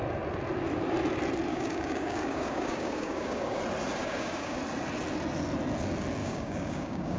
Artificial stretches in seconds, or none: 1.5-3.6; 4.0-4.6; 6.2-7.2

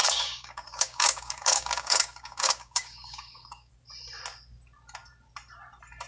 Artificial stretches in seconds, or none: 0.0-3.7

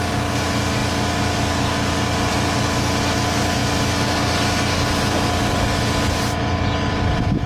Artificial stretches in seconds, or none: none

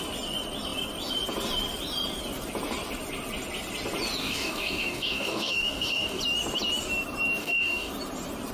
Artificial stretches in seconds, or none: 4.2-6.2; 7.4-7.9